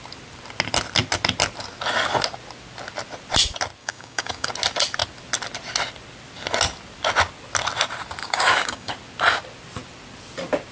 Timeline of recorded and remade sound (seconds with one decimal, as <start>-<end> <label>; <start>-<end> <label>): 0.0-3.8 recorded; 3.8-4.5 remade; 4.5-8.2 recorded; 8.2-8.9 remade; 8.9-10.7 recorded